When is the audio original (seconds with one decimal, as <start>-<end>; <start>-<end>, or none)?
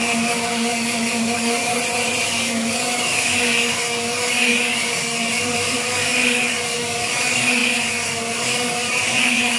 1.7-2.3